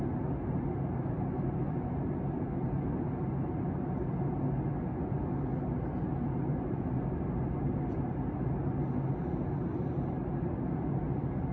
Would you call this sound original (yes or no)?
yes